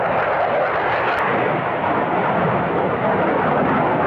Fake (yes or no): no